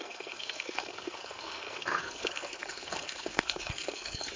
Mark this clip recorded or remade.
remade